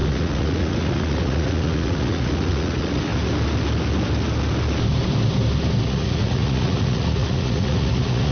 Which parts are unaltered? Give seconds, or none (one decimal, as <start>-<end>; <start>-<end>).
3.1-5.8